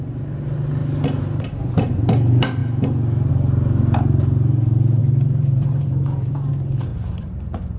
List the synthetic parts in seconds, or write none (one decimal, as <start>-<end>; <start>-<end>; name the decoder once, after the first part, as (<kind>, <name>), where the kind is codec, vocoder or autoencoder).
5.0-6.5 (vocoder, BigVGAN v2); 6.9-7.8